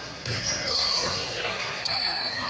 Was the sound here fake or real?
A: fake